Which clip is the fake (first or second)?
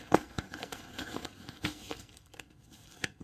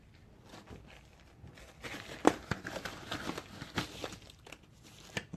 first